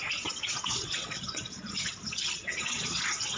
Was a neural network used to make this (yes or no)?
yes